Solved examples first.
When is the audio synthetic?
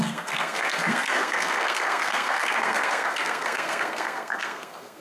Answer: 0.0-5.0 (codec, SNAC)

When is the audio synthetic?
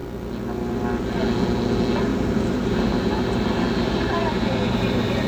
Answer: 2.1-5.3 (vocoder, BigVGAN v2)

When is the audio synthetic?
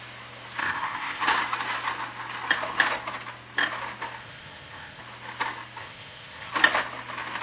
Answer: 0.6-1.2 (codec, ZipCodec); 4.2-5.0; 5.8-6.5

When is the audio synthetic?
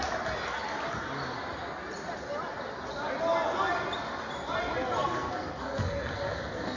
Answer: 5.1-6.8 (codec, SNAC)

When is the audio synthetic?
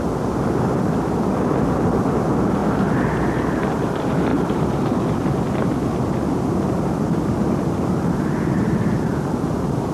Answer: none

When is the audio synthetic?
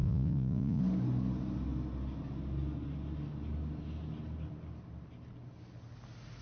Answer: 0.0-0.8 (vocoder, Vocos)